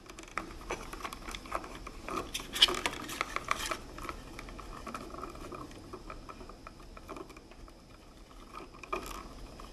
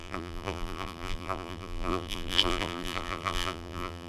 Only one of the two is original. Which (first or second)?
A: first